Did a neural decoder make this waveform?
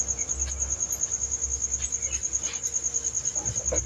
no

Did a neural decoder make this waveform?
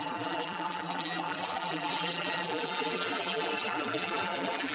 yes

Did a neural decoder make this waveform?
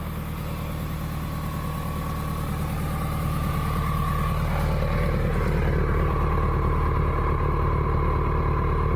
yes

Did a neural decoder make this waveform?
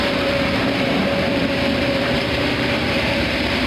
yes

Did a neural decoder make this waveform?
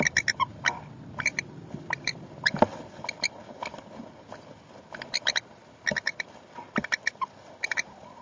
no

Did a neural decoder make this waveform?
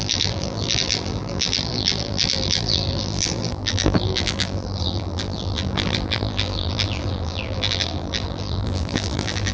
yes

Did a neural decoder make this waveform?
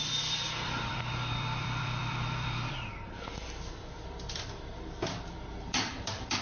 yes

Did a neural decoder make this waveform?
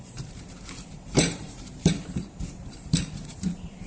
yes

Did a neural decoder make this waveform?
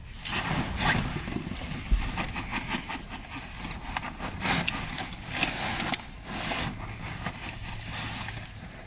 no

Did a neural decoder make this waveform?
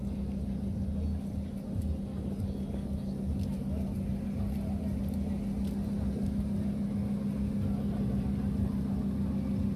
no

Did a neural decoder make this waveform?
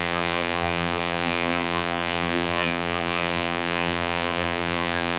yes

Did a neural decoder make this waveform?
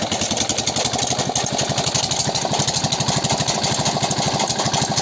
no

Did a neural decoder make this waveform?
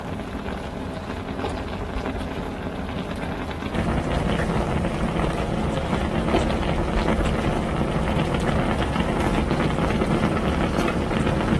no